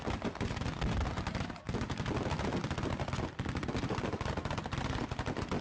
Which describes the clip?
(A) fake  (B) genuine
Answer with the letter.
B